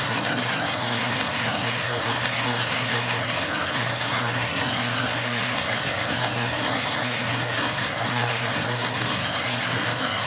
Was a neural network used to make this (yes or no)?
yes